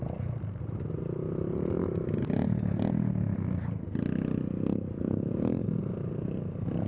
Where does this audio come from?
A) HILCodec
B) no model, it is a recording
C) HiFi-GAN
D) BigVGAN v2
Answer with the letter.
B